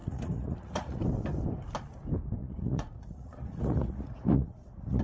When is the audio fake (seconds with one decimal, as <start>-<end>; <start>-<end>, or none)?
0.0-1.0; 2.4-5.0